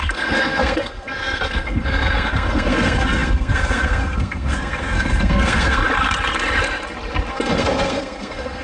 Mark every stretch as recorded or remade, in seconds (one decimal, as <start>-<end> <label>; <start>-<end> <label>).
0.0-5.8 remade; 5.8-7.3 recorded; 7.3-8.6 remade